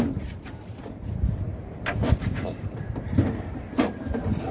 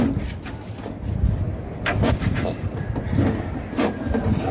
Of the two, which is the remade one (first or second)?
first